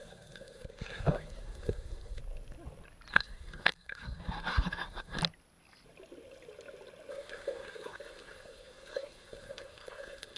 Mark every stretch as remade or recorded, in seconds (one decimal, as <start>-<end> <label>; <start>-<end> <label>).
0.0-2.2 remade; 2.2-3.1 recorded; 3.1-5.2 remade; 5.2-7.1 recorded; 7.1-10.4 remade